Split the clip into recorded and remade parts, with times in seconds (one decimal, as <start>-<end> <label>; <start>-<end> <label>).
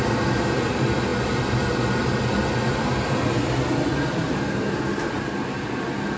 0.0-6.2 recorded